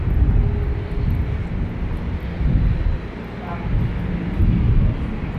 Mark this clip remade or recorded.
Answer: recorded